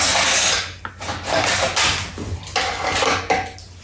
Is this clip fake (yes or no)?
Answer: no